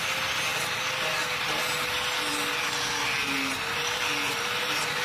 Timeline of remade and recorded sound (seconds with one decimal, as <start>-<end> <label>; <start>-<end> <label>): 0.0-5.0 recorded